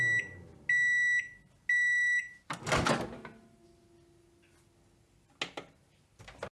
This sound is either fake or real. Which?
real